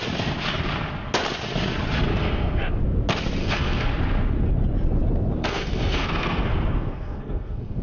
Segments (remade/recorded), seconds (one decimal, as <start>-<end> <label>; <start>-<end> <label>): 0.0-2.1 recorded; 2.1-2.8 remade; 2.8-3.4 recorded; 3.4-3.9 remade; 3.9-5.4 recorded; 5.4-7.8 remade